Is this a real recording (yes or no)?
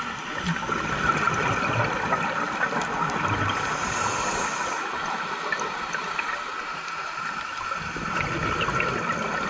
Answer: yes